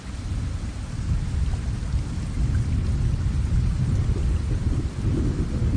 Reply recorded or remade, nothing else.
recorded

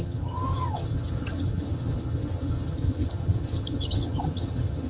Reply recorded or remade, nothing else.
remade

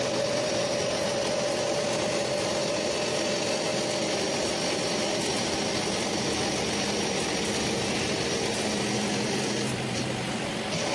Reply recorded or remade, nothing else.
recorded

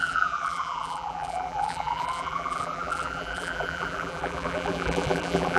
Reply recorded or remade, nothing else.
remade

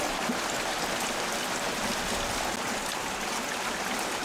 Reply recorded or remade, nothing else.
recorded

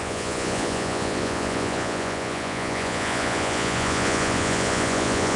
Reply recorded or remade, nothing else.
remade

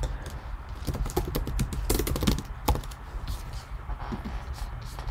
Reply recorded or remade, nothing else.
recorded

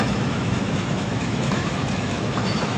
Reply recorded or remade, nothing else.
remade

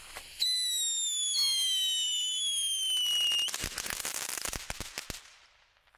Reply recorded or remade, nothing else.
recorded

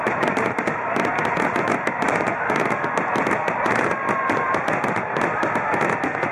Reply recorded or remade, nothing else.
recorded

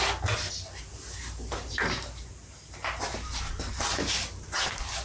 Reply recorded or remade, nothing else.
recorded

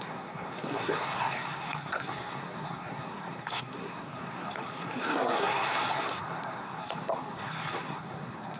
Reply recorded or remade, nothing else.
remade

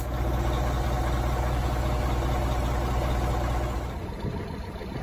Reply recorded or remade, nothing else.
recorded